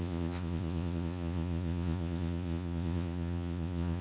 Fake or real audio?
fake